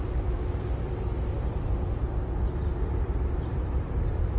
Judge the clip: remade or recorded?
recorded